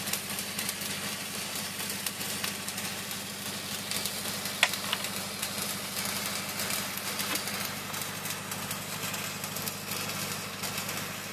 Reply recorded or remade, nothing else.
recorded